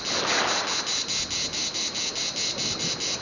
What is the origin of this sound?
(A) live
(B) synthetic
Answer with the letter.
A